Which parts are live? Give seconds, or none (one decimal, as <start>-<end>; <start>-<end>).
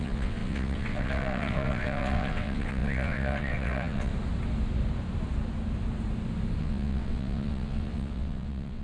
4.1-6.6